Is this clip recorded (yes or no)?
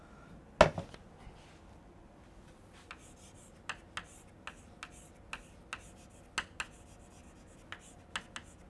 yes